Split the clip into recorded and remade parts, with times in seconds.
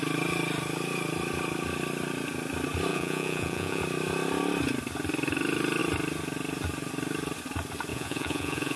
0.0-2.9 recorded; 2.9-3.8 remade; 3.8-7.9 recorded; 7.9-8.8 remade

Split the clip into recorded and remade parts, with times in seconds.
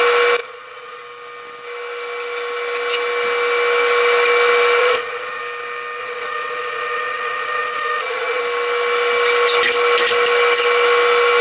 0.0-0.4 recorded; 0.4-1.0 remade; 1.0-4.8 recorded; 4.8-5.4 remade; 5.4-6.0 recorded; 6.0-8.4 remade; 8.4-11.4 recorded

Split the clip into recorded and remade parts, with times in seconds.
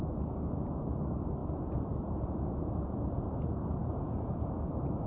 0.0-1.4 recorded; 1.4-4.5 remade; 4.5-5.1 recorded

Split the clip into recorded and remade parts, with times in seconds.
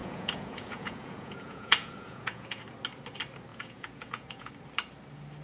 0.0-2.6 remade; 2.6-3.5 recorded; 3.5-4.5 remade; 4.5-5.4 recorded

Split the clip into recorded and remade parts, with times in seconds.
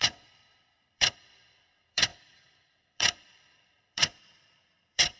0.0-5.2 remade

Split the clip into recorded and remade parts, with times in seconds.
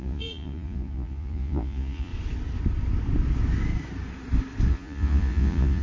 0.0-2.1 remade; 2.1-4.7 recorded; 4.7-5.8 remade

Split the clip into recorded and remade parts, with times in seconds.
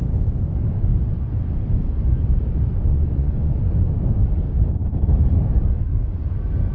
0.0-2.9 recorded; 2.9-3.7 remade; 3.7-6.7 recorded